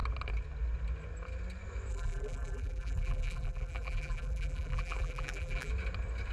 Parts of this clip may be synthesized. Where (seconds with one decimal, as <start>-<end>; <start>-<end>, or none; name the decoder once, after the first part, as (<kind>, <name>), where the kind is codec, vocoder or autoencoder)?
1.9-5.7 (vocoder, BigVGAN v2)